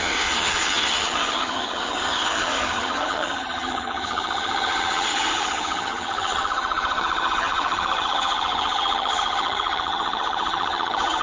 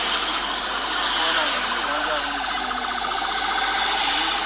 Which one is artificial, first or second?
first